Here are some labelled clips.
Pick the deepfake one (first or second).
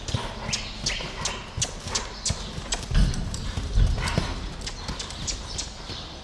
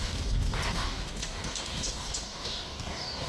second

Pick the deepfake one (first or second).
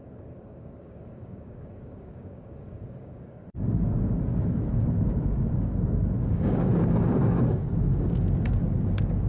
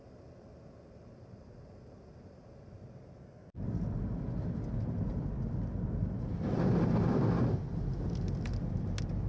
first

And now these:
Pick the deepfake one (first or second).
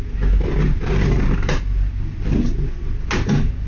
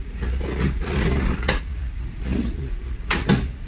second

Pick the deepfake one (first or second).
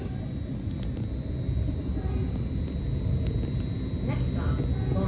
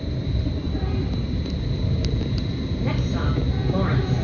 second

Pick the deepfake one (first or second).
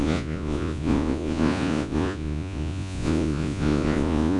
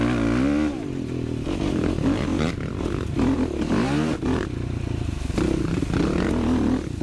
first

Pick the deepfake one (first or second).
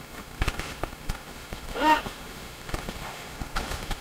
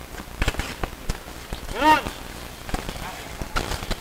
first